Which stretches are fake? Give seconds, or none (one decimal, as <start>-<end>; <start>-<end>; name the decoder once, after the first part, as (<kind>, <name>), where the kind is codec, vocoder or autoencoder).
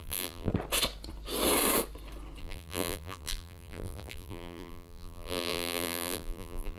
0.0-0.5 (vocoder, BigVGAN v2); 2.4-6.8